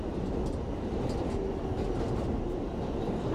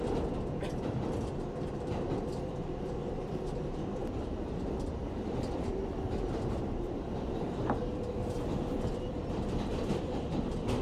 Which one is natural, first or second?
first